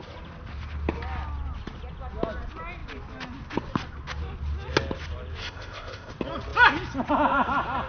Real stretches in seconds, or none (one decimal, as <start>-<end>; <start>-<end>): 0.0-5.4; 6.1-7.9